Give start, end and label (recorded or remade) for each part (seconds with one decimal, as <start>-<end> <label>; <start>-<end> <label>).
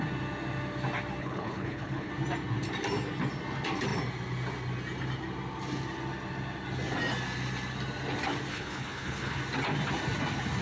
0.0-1.2 recorded; 1.2-2.1 remade; 2.1-8.5 recorded; 8.5-9.4 remade; 9.4-10.6 recorded